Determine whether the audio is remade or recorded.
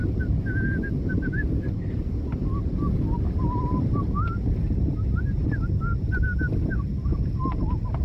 recorded